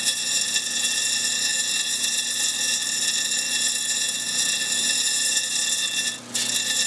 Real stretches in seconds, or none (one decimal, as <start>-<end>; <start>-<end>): 0.0-6.9